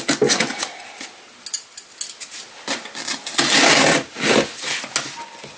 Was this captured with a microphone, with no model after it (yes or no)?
yes